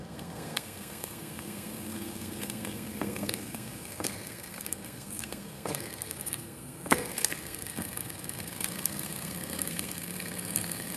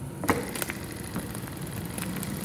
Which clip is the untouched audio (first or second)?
second